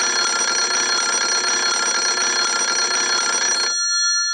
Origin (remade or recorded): recorded